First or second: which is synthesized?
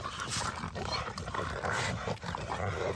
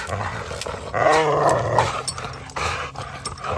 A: first